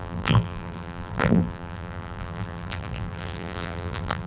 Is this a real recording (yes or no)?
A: no